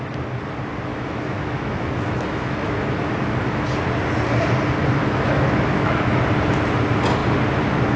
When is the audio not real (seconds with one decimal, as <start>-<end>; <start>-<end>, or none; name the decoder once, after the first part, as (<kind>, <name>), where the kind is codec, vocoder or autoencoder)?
0.9-3.6 (autoencoder, DAC-VAE); 5.0-6.2